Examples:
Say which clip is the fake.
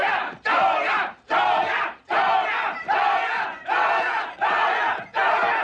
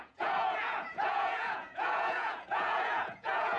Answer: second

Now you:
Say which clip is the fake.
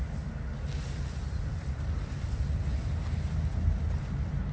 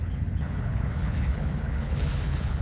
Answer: second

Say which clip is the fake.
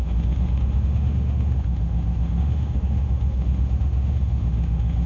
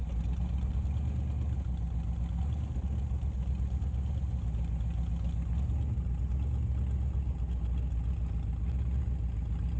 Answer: first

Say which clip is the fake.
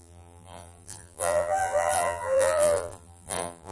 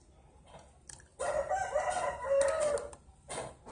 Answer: first